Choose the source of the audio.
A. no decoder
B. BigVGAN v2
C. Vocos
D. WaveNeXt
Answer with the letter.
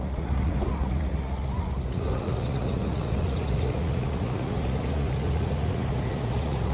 C